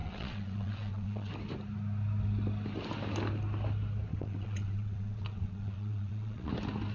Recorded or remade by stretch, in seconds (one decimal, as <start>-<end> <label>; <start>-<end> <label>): 0.0-1.3 remade; 1.3-4.1 recorded; 4.1-6.5 remade; 6.5-6.9 recorded